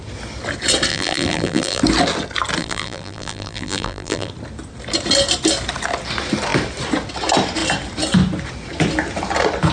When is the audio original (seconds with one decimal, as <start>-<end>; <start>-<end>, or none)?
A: 0.0-0.9; 1.8-2.6; 4.3-9.7